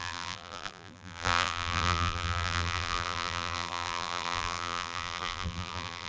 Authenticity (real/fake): fake